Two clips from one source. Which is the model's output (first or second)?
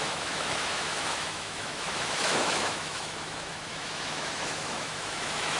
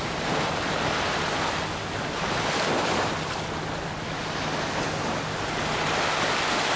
first